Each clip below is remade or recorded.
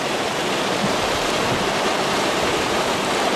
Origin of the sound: remade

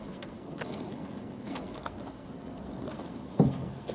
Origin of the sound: remade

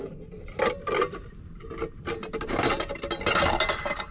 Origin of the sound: recorded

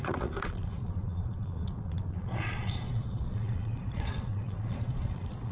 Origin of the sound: remade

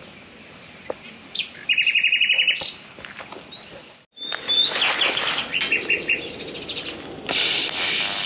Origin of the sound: recorded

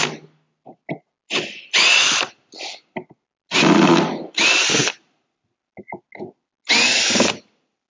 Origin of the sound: recorded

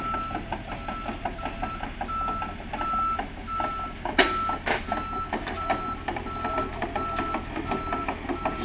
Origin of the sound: recorded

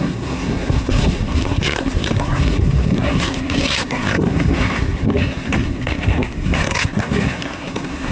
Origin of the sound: remade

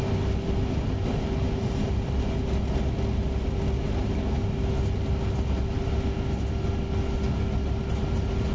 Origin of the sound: recorded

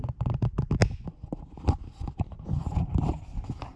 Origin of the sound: recorded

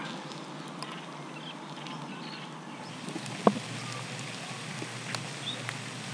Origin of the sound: recorded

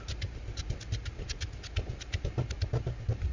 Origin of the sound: recorded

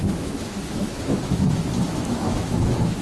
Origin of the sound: remade